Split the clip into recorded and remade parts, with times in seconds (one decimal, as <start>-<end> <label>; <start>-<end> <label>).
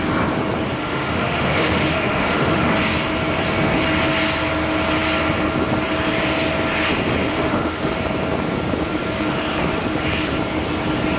0.0-0.8 recorded; 0.8-2.7 remade; 2.7-7.3 recorded; 7.3-7.8 remade; 7.8-11.2 recorded